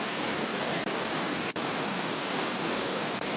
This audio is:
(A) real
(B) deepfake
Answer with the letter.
B